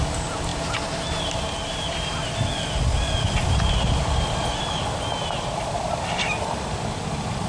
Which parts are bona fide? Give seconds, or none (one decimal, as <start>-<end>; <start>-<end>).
0.0-7.5